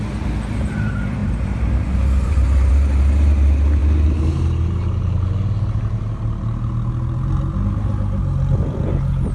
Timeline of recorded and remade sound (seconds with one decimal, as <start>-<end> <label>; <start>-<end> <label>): 0.0-1.2 recorded; 1.2-2.7 remade; 2.7-9.3 recorded